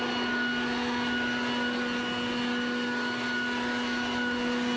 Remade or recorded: recorded